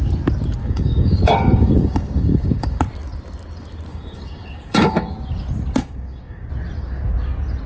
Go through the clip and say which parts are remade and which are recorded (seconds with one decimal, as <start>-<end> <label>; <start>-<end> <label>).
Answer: 0.0-0.6 recorded; 0.6-2.8 remade; 2.8-3.9 recorded; 3.9-5.1 remade; 5.1-5.8 recorded; 5.8-6.5 remade; 6.5-7.7 recorded